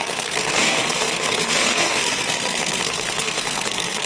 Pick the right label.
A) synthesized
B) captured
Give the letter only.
A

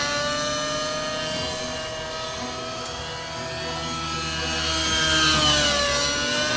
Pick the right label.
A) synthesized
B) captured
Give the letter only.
B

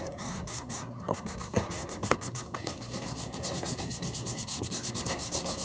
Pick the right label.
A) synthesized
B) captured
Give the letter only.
A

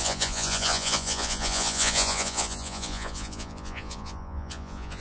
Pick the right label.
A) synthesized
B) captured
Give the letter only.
A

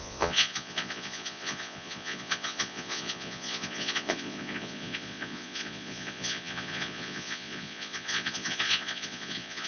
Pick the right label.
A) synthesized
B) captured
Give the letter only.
A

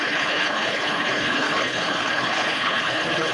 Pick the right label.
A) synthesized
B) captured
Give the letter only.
A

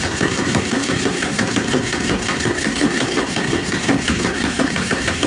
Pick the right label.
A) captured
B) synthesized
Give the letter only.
B